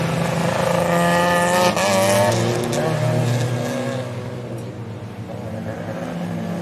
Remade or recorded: recorded